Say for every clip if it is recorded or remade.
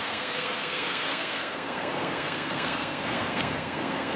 remade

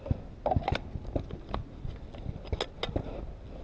recorded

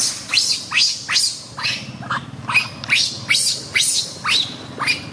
recorded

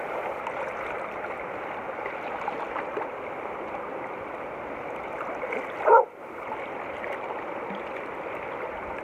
recorded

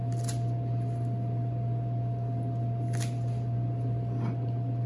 recorded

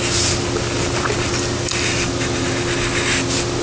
recorded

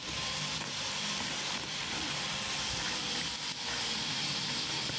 remade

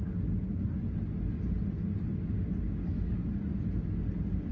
recorded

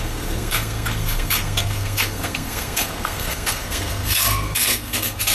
remade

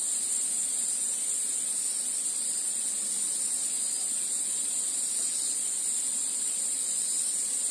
recorded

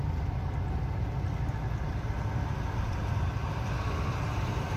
recorded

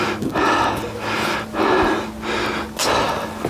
recorded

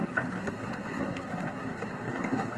remade